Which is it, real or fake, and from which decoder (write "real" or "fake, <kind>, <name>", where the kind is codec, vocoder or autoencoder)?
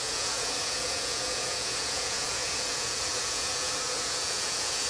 fake, vocoder, Vocos